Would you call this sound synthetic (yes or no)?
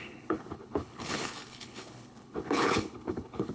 yes